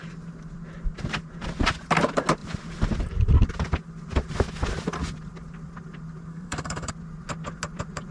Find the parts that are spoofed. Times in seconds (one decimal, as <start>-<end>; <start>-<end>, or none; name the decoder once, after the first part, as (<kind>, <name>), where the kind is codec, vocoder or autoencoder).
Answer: 6.3-6.9 (codec, SNAC)